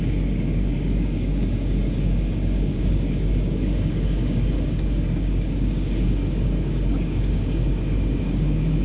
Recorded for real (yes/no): no